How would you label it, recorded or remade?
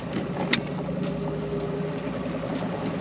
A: recorded